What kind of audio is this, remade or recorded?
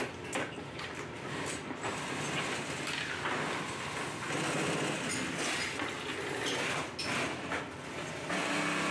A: recorded